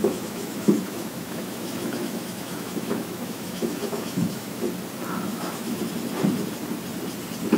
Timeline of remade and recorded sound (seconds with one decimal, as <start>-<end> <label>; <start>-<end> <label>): 0.0-4.6 remade; 4.6-5.3 recorded; 5.3-5.8 remade; 5.8-7.6 recorded